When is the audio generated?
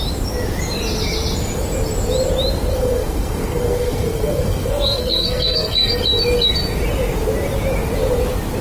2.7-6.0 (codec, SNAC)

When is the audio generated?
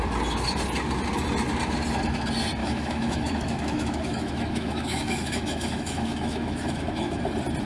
2.6-7.2 (autoencoder, DAC-VAE)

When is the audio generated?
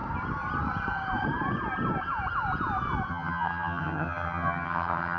3.1-5.2 (vocoder, HiFi-GAN)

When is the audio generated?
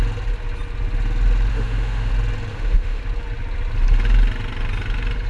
1.5-2.1 (autoencoder, DAC-VAE); 2.5-3.0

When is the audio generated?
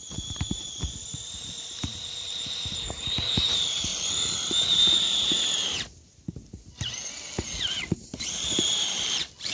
0.0-3.9 (vocoder, BigVGAN v2); 7.7-9.5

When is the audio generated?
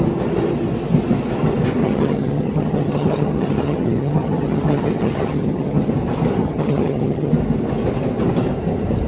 1.8-5.9 (vocoder, HiFi-GAN); 6.4-7.3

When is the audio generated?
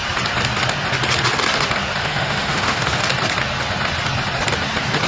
2.0-3.0 (autoencoder, DAC-VAE)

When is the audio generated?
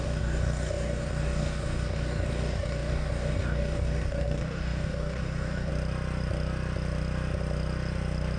0.0-5.7 (codec, DAC)